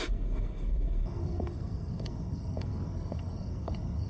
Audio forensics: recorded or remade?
remade